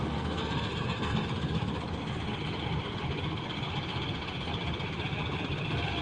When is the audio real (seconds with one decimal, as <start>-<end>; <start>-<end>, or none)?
1.3-6.0